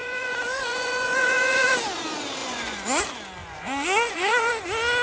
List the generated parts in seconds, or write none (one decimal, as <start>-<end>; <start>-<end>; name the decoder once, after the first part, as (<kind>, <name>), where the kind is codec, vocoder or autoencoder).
0.0-1.7 (vocoder, Vocos); 2.4-3.0; 3.4-4.5